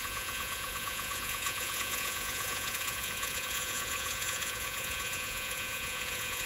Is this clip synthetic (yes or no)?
yes